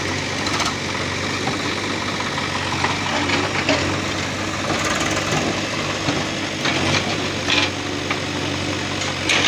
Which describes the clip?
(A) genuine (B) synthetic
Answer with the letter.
A